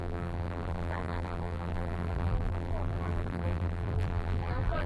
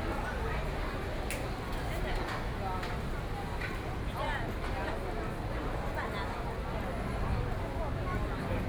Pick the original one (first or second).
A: second